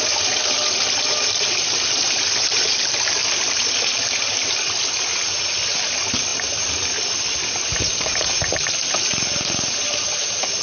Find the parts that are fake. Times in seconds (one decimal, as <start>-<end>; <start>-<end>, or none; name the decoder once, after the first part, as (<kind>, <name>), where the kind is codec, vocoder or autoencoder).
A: none

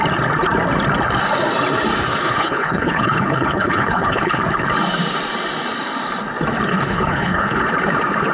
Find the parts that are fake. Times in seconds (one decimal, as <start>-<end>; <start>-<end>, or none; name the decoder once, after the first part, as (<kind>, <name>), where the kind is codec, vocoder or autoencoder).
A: 2.1-4.4 (codec, HILCodec); 6.7-7.7

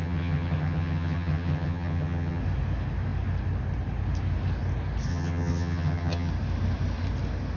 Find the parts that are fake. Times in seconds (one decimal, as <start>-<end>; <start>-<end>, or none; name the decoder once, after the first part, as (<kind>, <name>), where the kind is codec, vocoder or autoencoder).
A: 0.0-2.4 (vocoder, HiFi-GAN); 5.1-6.3

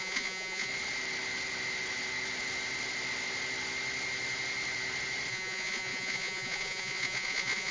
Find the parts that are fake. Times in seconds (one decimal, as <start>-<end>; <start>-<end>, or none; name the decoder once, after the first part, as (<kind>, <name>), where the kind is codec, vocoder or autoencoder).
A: 0.0-0.7 (vocoder, Vocos); 5.3-7.7

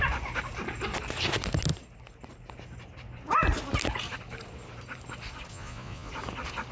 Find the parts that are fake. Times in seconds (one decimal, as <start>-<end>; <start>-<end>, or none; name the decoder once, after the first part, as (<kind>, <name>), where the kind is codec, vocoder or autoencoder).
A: 5.5-6.1 (vocoder, Vocos)

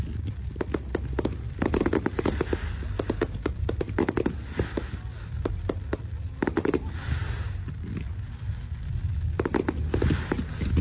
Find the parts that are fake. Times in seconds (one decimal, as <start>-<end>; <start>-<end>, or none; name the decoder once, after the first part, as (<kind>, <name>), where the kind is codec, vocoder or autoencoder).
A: none

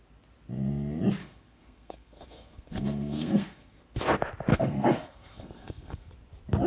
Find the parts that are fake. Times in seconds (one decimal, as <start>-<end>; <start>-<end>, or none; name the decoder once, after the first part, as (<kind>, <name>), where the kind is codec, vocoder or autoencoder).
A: 1.2-3.8 (codec, SNAC); 4.5-6.1